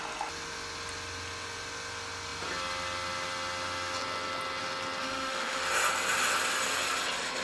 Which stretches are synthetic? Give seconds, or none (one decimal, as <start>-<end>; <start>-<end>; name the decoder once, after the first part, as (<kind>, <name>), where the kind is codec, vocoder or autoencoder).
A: 5.0-5.6 (autoencoder, DAC-VAE)